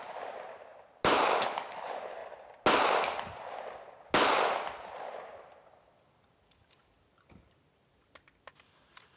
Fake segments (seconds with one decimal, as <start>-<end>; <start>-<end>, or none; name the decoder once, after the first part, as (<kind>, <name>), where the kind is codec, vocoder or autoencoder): none